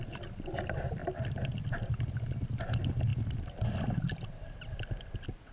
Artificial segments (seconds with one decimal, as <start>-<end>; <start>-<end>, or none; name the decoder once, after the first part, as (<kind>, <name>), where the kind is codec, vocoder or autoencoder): 1.0-1.7 (vocoder, BigVGAN v2); 3.1-3.8